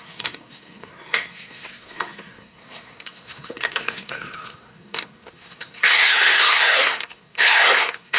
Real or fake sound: fake